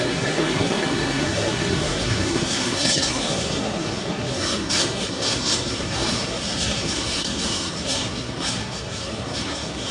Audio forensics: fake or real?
fake